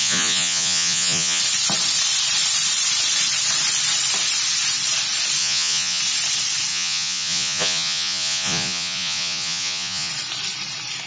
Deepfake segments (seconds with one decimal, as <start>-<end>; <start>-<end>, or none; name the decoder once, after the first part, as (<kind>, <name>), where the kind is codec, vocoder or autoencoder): 0.0-1.4 (vocoder, Vocos); 5.4-6.0; 6.7-10.1